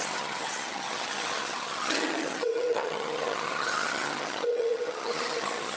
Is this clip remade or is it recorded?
remade